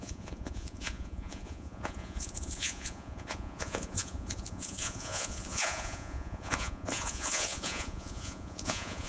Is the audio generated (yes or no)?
yes